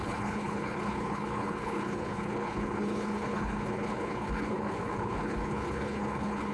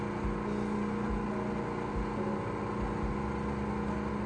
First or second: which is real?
second